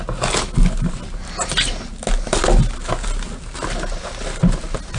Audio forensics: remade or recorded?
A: recorded